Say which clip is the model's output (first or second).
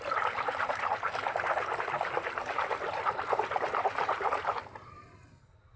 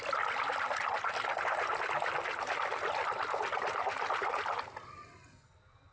first